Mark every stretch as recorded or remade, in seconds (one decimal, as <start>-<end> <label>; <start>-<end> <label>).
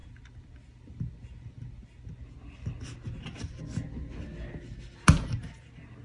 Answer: 0.0-6.0 recorded